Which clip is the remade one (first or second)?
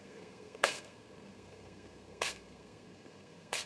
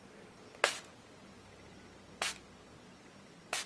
first